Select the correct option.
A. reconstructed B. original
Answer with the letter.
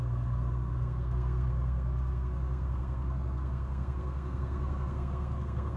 A